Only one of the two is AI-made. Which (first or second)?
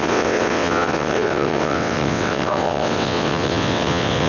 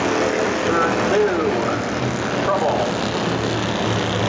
first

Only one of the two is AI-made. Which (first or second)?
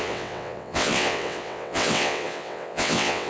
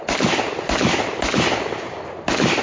first